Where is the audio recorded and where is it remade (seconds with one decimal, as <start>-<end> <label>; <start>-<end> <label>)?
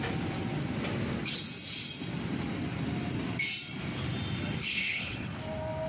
0.0-4.6 recorded; 4.6-5.4 remade; 5.4-5.9 recorded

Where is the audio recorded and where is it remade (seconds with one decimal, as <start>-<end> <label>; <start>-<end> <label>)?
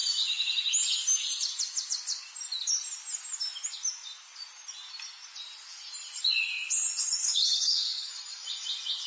0.0-7.2 recorded; 7.2-8.1 remade; 8.1-9.1 recorded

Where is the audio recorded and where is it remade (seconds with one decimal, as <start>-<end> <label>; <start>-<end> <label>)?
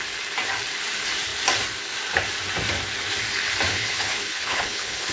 0.0-3.7 recorded; 3.7-5.1 remade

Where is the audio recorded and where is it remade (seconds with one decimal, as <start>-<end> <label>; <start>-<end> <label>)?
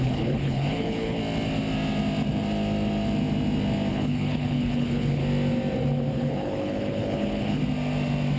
0.0-1.2 remade; 1.2-3.9 recorded; 3.9-5.2 remade; 5.2-6.1 recorded; 6.1-7.6 remade; 7.6-8.4 recorded